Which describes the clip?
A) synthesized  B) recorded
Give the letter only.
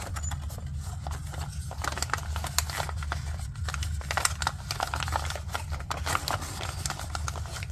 B